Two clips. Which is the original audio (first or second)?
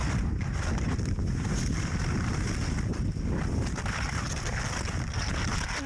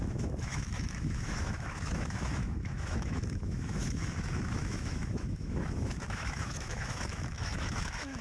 first